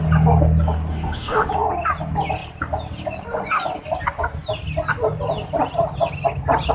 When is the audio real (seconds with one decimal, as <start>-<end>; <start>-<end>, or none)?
0.0-0.9; 1.5-6.7